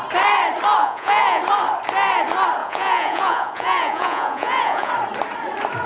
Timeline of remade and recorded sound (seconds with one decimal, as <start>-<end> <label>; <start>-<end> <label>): 0.0-0.8 recorded; 0.8-1.4 remade; 1.4-2.6 recorded; 2.6-4.9 remade; 4.9-5.9 recorded